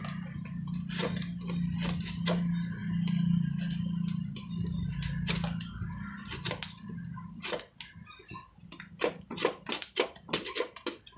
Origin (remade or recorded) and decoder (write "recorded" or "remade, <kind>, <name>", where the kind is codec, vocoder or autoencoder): recorded